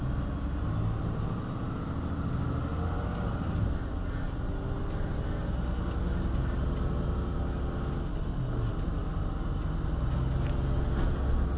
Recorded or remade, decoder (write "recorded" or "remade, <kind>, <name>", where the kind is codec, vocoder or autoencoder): recorded